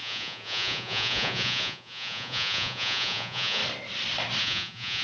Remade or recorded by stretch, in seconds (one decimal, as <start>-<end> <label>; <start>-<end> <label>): 0.0-3.6 remade; 3.6-4.4 recorded; 4.4-5.0 remade